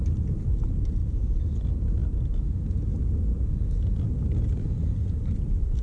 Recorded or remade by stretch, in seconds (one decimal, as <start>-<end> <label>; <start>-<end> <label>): 0.0-5.8 recorded